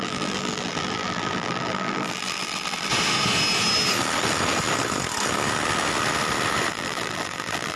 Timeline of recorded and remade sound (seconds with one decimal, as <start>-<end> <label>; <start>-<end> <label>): 0.0-2.9 remade; 2.9-6.7 recorded; 6.7-7.8 remade